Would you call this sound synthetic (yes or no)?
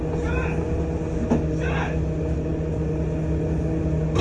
no